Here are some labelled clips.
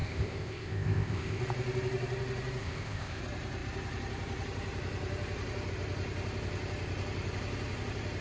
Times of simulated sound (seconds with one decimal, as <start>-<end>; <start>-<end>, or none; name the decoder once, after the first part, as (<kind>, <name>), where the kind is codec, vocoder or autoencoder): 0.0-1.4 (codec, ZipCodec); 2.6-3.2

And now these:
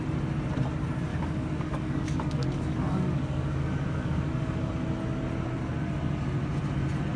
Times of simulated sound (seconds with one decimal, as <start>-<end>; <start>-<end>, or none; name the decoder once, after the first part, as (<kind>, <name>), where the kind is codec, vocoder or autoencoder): 1.1-4.7 (codec, DAC)

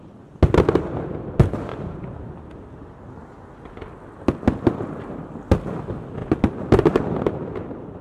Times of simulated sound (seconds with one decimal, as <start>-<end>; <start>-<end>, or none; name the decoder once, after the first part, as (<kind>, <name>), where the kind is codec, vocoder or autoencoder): 1.7-2.4 (vocoder, BigVGAN v2); 6.2-8.0

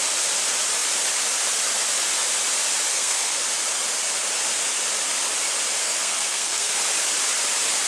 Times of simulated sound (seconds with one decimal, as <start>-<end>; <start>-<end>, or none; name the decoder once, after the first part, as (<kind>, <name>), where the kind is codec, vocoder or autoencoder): 2.9-3.4 (codec, SNAC); 5.8-6.8